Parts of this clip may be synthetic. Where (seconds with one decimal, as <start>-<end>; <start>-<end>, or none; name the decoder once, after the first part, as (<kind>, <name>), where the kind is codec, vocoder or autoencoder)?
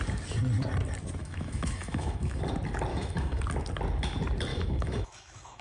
1.2-2.4 (autoencoder, DAC-VAE); 2.9-3.4; 4.5-5.6